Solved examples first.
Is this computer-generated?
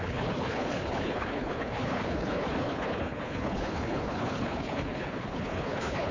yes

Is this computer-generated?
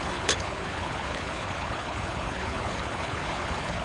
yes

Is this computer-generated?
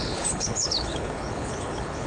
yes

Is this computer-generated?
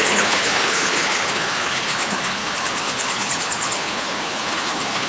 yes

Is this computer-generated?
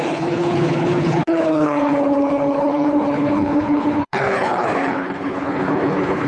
yes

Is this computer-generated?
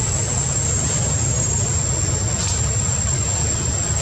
no